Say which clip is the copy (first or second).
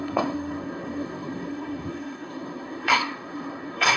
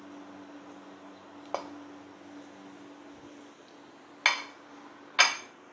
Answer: first